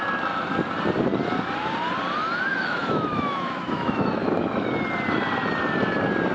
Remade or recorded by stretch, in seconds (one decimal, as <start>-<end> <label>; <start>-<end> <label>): 0.0-2.5 recorded; 2.5-4.7 remade; 4.7-6.3 recorded